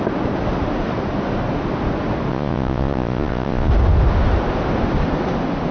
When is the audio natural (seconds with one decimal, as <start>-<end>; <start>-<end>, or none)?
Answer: 0.0-2.3; 3.7-5.7